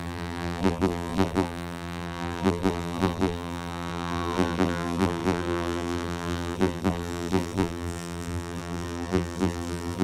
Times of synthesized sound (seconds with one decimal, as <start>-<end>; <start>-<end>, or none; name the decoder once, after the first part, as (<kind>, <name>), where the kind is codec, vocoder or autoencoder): 0.0-10.0 (vocoder, BigVGAN v2)